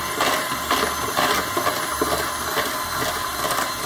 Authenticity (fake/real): real